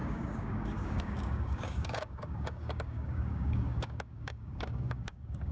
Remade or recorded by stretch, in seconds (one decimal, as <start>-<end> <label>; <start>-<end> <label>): 0.0-5.5 remade